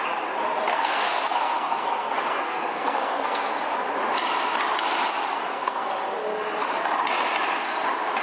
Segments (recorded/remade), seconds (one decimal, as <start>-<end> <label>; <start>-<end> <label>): 0.0-0.7 recorded; 0.7-3.6 remade; 3.6-5.3 recorded; 5.3-5.9 remade; 5.9-8.2 recorded